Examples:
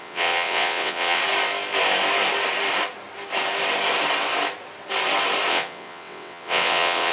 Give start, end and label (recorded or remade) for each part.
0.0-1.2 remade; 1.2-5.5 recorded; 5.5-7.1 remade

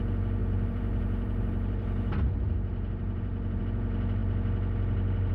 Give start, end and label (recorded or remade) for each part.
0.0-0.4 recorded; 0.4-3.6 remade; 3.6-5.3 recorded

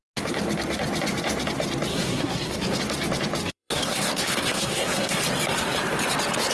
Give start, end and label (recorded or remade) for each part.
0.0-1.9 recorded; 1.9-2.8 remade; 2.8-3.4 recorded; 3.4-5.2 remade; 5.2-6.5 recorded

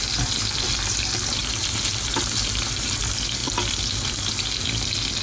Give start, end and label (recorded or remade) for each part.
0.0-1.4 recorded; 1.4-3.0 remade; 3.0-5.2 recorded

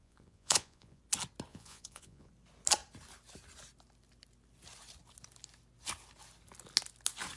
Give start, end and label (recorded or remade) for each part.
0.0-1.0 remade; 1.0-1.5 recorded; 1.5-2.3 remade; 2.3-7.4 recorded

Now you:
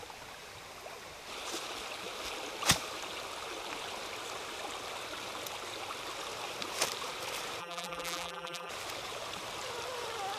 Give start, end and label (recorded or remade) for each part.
0.0-7.6 recorded; 7.6-8.7 remade; 8.7-10.4 recorded